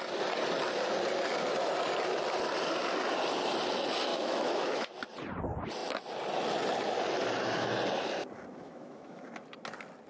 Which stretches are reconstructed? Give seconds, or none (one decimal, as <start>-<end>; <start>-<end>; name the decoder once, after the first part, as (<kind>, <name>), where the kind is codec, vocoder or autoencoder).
4.1-4.9 (autoencoder, DAC-VAE); 8.5-9.2